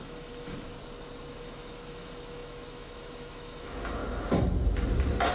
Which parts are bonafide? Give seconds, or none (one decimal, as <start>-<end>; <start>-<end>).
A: 0.7-1.3; 4.0-5.3